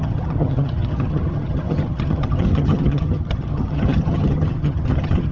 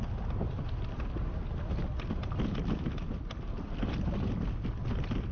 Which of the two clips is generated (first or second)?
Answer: first